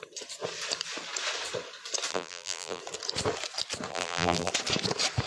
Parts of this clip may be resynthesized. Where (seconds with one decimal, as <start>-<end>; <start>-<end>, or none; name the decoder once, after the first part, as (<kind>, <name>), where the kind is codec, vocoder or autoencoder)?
2.1-2.8 (vocoder, BigVGAN v2); 3.9-4.5